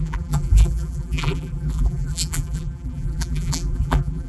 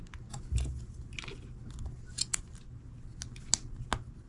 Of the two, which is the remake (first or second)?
first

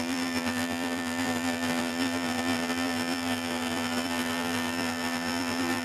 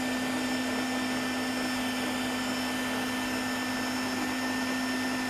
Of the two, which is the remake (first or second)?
first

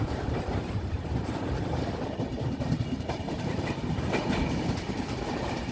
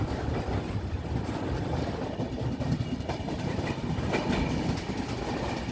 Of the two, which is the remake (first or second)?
first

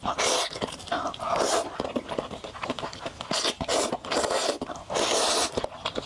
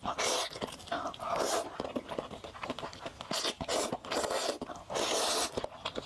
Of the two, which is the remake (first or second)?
first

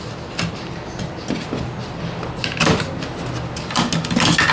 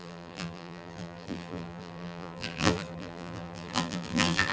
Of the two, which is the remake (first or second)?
second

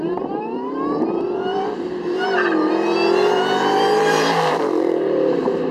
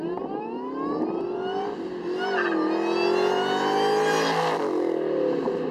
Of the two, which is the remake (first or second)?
first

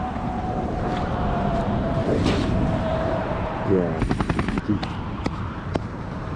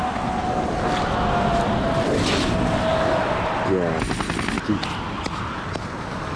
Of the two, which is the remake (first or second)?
first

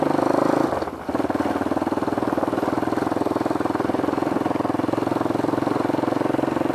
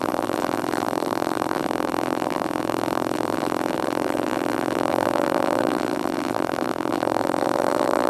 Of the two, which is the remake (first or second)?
second